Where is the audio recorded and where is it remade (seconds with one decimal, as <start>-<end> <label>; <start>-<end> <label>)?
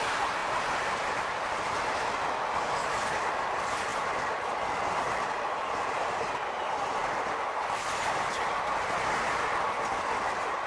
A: 0.0-10.7 recorded